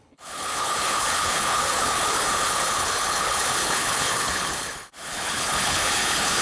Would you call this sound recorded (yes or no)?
no